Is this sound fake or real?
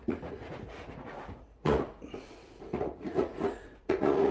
fake